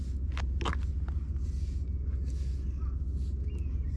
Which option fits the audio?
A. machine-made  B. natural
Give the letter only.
B